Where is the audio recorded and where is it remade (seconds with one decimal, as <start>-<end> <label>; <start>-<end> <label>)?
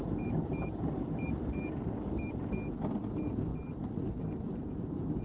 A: 0.0-2.5 remade; 2.5-3.5 recorded; 3.5-5.2 remade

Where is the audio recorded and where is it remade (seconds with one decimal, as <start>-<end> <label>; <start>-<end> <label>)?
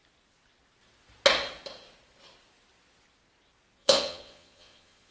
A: 0.0-3.8 recorded; 3.8-5.1 remade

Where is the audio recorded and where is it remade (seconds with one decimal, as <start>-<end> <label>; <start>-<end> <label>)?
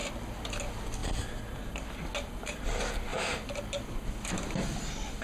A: 0.0-3.1 recorded; 3.1-4.3 remade; 4.3-5.2 recorded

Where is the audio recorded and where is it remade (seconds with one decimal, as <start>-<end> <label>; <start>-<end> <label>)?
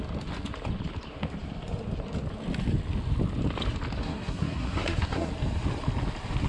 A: 0.0-4.0 recorded; 4.0-5.3 remade; 5.3-6.5 recorded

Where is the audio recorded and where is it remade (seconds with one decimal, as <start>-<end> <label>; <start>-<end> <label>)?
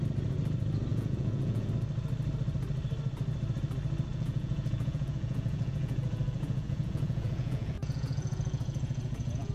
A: 0.0-0.9 recorded; 0.9-1.7 remade; 1.7-4.1 recorded; 4.1-9.5 remade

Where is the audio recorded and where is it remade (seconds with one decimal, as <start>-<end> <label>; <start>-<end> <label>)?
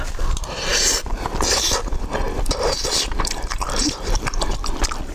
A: 0.0-5.1 remade